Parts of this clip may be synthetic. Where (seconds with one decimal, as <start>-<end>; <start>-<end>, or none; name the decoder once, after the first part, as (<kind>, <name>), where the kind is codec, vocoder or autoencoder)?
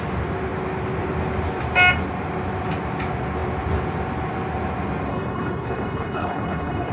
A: 5.1-6.9 (codec, HILCodec)